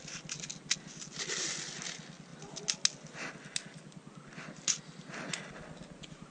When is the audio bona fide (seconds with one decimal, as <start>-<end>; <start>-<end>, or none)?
0.0-6.3